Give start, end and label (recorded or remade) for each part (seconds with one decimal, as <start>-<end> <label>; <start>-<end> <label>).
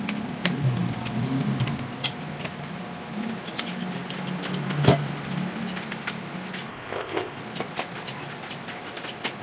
0.0-6.7 recorded; 6.7-7.4 remade; 7.4-9.4 recorded